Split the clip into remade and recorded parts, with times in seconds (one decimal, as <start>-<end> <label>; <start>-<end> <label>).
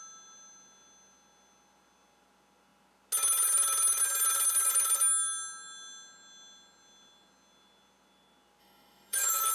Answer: 0.0-8.6 recorded; 8.6-9.5 remade